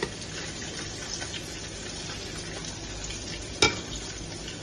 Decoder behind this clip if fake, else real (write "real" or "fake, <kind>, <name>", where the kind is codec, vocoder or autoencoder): real